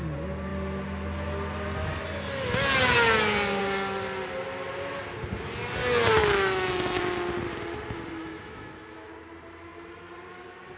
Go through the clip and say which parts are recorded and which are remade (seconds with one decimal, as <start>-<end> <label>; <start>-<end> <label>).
0.0-6.2 recorded; 6.2-7.0 remade; 7.0-8.2 recorded; 8.2-9.1 remade; 9.1-10.8 recorded